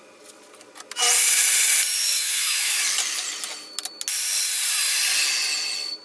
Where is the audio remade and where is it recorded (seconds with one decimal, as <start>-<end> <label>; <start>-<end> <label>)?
0.0-2.0 recorded; 2.0-2.8 remade; 2.8-6.0 recorded